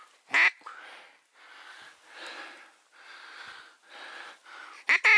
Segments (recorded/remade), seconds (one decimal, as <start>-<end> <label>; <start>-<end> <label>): 0.0-5.2 recorded